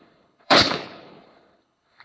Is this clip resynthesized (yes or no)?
yes